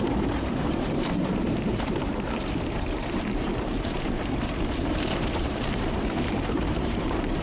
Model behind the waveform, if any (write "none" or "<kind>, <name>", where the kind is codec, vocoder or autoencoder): vocoder, BigVGAN v2